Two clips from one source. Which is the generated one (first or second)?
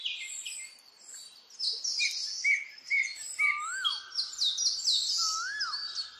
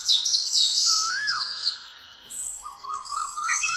second